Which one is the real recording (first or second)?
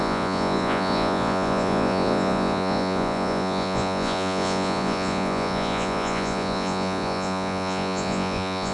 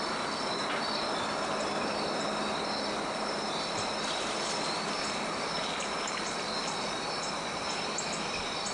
second